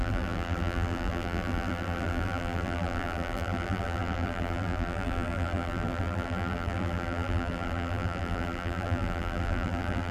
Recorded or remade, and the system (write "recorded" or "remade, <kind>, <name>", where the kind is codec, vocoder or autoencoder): remade, vocoder, BigVGAN v2